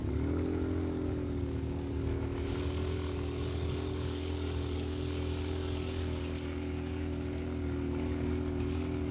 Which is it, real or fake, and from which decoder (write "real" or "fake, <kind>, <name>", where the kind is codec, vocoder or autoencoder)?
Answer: fake, codec, DAC